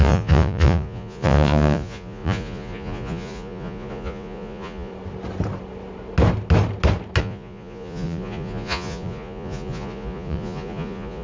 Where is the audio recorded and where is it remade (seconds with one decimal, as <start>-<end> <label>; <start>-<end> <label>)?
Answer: 0.0-4.9 remade; 4.9-7.2 recorded; 7.2-11.2 remade